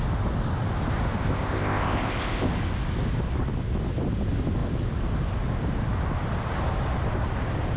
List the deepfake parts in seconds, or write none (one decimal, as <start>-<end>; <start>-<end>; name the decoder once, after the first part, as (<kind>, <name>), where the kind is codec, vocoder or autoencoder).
1.2-2.5 (codec, ZipCodec)